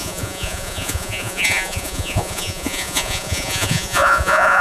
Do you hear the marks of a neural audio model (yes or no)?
yes